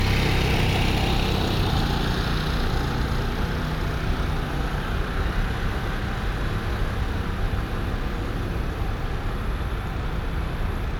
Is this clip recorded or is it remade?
recorded